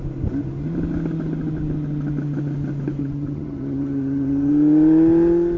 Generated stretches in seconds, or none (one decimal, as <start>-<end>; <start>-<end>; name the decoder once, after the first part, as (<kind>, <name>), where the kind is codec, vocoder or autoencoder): 3.0-4.5 (vocoder, HiFi-GAN)